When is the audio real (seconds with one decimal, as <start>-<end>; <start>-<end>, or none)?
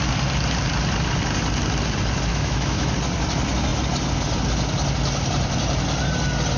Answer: 0.0-2.3; 2.9-6.6